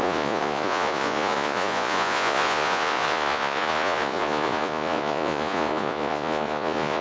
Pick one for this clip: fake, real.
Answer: fake